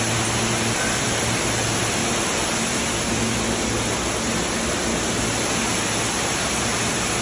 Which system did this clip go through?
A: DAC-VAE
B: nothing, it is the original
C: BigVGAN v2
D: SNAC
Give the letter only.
B